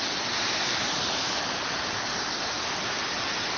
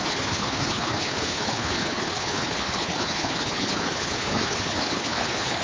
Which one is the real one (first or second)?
first